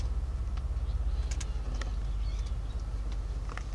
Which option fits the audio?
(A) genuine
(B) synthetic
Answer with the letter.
A